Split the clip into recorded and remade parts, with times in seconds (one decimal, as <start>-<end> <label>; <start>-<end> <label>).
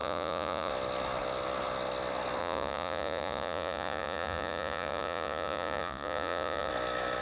0.0-0.7 remade; 0.7-2.4 recorded; 2.4-6.7 remade; 6.7-7.2 recorded